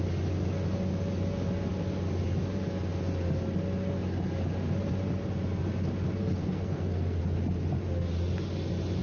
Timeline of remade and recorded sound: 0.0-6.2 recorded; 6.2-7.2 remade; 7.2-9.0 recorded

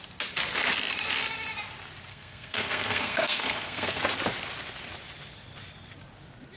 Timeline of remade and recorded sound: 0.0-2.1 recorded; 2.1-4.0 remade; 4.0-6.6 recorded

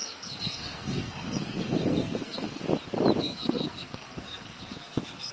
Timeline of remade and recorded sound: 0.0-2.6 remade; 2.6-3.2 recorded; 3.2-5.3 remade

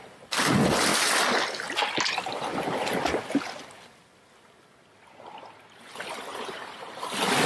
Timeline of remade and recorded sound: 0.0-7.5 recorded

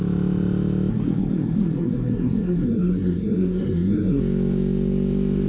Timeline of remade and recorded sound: 0.0-0.9 recorded; 0.9-4.2 remade; 4.2-5.5 recorded

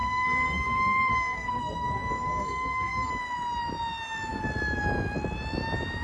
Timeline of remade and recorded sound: 0.0-3.1 remade; 3.1-6.0 recorded

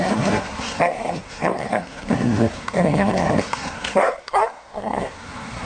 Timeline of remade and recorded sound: 0.0-5.7 remade

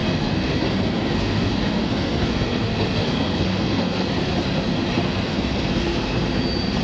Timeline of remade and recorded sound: 0.0-4.1 remade; 4.1-5.0 recorded; 5.0-5.7 remade; 5.7-6.8 recorded